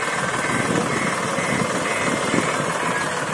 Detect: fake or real fake